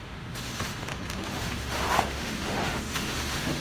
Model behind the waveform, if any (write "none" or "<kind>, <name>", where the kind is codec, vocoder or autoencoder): autoencoder, DAC-VAE